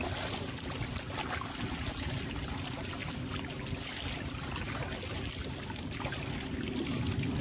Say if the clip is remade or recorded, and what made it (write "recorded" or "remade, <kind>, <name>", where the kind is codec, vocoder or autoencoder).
recorded